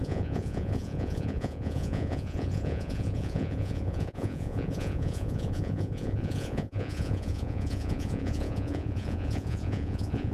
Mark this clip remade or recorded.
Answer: remade